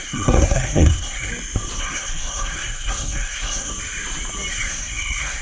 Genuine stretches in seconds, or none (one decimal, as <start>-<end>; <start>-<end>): 1.3-1.8; 3.7-4.5